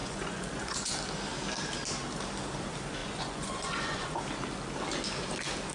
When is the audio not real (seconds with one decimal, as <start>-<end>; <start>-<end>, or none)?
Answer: 0.0-0.9; 3.0-4.2